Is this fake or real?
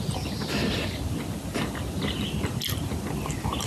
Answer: real